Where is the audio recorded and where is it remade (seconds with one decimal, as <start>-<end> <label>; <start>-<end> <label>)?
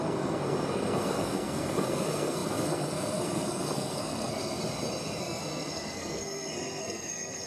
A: 0.0-4.6 remade; 4.6-5.2 recorded; 5.2-7.5 remade